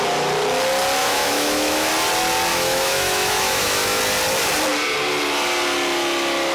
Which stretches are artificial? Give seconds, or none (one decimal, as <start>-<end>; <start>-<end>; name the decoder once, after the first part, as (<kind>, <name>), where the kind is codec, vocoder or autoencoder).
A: 1.0-1.9 (autoencoder, DAC-VAE); 2.5-4.0